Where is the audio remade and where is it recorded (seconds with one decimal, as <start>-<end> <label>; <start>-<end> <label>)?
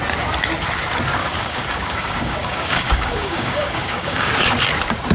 0.0-1.2 recorded; 1.2-4.3 remade; 4.3-5.1 recorded